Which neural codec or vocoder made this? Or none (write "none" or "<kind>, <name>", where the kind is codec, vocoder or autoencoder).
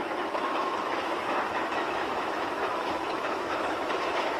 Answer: autoencoder, DAC-VAE